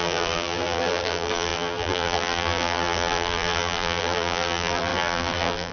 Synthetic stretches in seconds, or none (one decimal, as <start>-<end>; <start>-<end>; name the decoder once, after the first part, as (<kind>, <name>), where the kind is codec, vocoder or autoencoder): 0.0-5.7 (vocoder, BigVGAN v2)